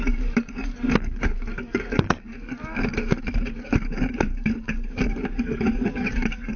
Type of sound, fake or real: fake